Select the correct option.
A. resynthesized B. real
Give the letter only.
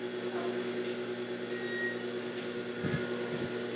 B